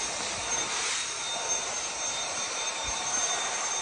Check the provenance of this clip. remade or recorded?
remade